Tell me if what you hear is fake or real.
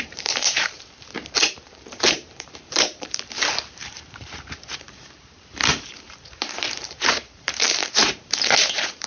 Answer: fake